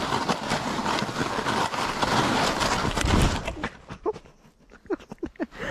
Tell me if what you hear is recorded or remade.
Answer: recorded